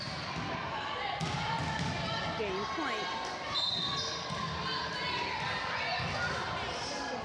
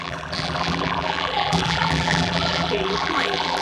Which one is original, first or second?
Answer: first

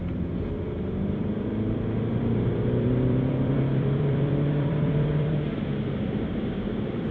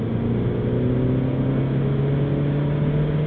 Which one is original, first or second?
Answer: second